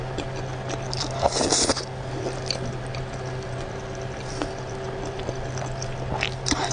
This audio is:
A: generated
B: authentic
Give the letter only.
B